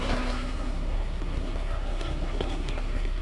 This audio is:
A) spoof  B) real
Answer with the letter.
A